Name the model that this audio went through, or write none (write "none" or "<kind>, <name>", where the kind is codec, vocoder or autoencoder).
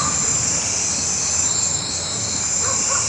none